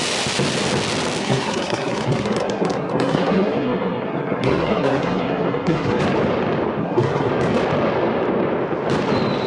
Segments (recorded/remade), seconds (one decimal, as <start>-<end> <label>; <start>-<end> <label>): 0.0-1.2 recorded; 1.2-6.0 remade; 6.0-6.8 recorded; 6.8-7.3 remade; 7.3-9.5 recorded